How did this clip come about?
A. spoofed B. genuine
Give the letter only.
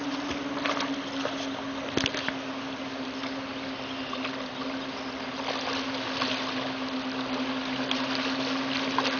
B